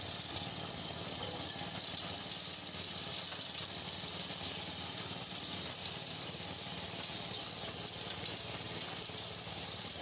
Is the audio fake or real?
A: fake